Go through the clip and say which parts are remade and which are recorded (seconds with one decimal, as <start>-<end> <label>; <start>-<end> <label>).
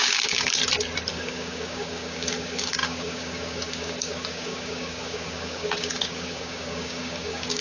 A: 0.0-0.6 remade; 0.6-1.1 recorded; 1.1-7.6 remade